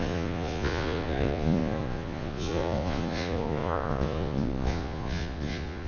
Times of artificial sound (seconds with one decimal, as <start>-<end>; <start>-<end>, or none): 0.0-5.9